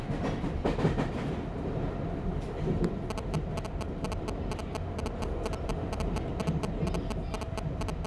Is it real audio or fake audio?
real